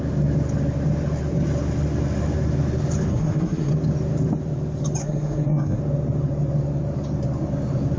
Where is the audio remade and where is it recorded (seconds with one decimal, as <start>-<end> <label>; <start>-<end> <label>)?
0.0-3.1 recorded; 3.1-3.7 remade; 3.7-5.0 recorded; 5.0-5.8 remade; 5.8-8.0 recorded